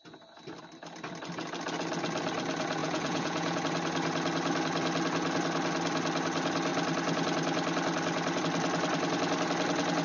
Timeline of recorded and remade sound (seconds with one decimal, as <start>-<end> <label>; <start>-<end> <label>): 0.0-2.8 recorded; 2.8-3.6 remade; 3.6-10.0 recorded